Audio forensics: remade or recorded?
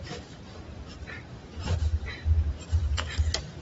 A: remade